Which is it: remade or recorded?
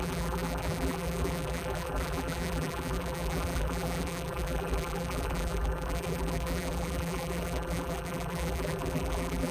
remade